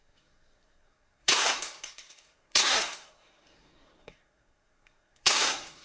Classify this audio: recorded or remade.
remade